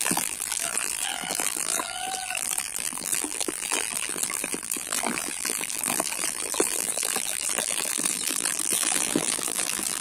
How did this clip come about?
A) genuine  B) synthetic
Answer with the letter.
B